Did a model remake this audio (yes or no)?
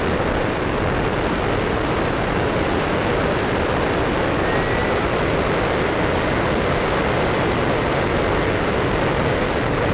no